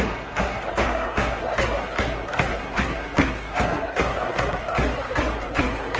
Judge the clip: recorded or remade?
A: remade